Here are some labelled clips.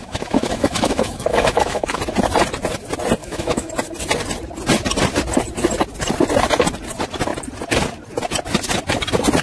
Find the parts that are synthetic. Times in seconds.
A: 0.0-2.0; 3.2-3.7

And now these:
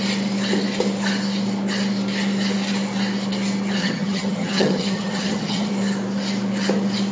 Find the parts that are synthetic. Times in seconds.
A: 3.8-5.7

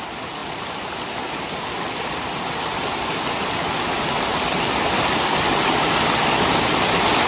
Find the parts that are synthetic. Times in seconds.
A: none